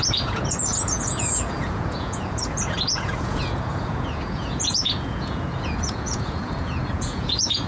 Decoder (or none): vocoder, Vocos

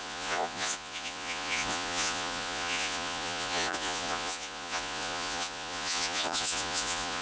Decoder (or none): vocoder, Vocos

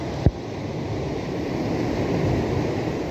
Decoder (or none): vocoder, BigVGAN v2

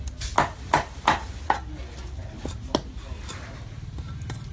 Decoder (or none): none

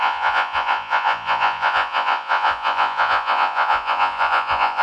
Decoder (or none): vocoder, Vocos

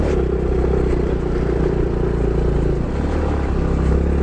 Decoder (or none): none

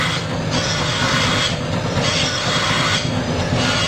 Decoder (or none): none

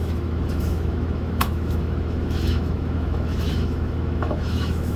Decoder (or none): autoencoder, DAC-VAE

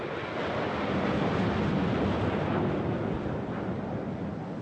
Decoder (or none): none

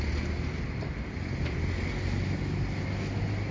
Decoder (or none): none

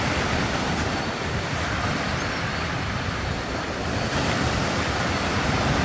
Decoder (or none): vocoder, BigVGAN v2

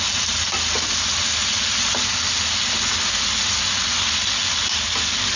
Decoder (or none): none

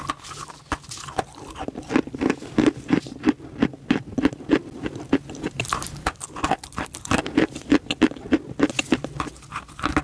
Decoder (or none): none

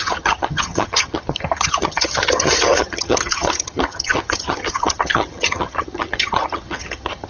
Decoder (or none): vocoder, HiFi-GAN